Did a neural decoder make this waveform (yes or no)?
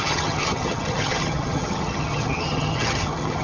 yes